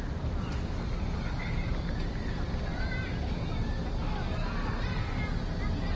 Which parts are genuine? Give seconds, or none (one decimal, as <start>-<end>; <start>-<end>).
0.0-6.0